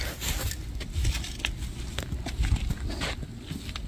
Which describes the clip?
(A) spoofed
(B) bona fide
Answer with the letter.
B